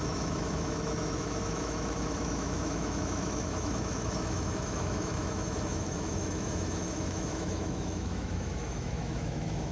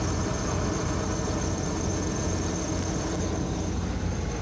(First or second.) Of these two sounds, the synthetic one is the first